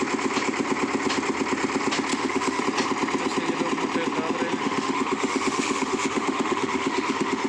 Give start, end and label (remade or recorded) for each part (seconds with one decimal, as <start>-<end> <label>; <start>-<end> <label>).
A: 0.0-2.1 recorded; 2.1-2.6 remade; 2.6-4.6 recorded; 4.6-7.5 remade